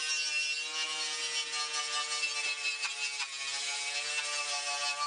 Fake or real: real